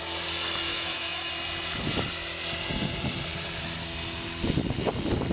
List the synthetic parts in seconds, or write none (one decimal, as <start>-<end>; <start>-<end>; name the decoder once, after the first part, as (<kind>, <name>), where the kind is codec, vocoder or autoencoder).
0.7-1.3 (autoencoder, DAC-VAE)